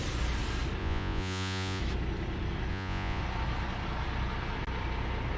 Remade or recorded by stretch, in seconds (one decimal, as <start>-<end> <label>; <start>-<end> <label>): 0.0-0.8 recorded; 0.8-1.8 remade; 1.8-2.7 recorded; 2.7-3.2 remade; 3.2-5.4 recorded